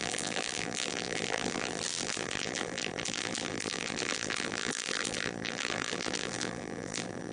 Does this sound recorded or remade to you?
remade